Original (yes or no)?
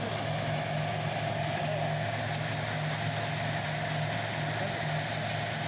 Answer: yes